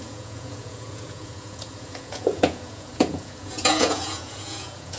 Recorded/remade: remade